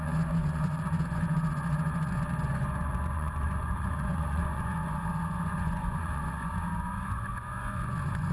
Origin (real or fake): fake